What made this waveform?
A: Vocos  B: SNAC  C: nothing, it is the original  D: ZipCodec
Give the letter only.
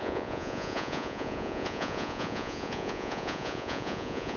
A